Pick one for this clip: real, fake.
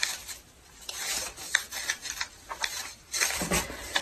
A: fake